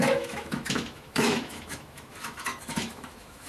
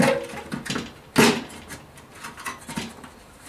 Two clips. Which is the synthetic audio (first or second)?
first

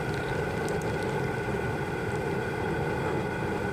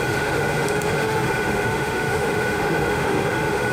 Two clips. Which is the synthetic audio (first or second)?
second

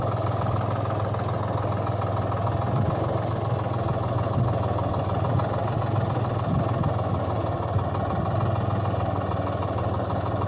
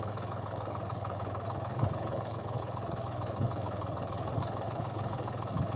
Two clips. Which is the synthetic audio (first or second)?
second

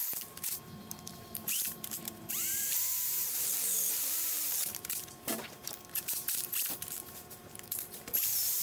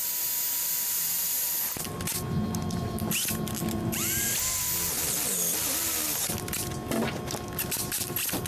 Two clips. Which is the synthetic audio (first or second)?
first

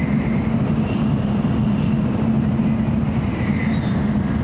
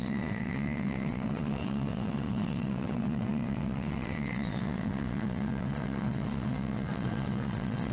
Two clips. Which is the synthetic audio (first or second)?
second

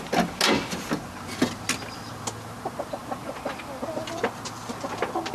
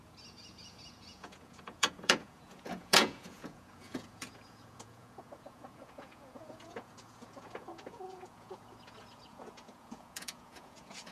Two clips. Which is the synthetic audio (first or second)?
second